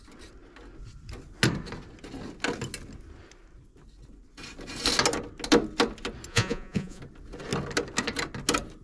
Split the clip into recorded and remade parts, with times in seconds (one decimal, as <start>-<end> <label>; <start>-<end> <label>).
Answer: 0.0-6.3 recorded; 6.3-7.0 remade; 7.0-8.8 recorded